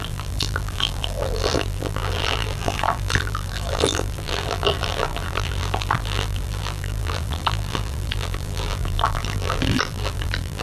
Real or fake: fake